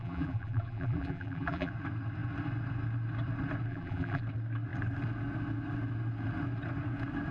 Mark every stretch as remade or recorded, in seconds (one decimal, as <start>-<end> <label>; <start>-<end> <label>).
0.0-1.7 remade; 1.7-3.7 recorded; 3.7-4.2 remade; 4.2-7.3 recorded